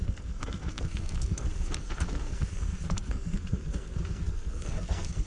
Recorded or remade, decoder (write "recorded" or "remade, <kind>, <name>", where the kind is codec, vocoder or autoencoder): remade, codec, SNAC